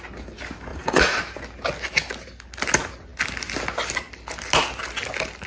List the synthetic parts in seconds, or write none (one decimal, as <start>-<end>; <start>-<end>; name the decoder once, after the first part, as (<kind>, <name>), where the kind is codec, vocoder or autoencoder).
0.7-1.2 (vocoder, Vocos)